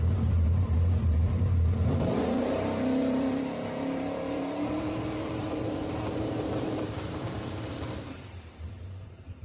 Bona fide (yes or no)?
no